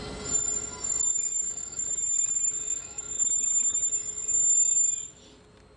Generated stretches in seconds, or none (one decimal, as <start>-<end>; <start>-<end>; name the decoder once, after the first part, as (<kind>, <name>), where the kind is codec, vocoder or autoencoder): 1.3-3.9 (autoencoder, DAC-VAE)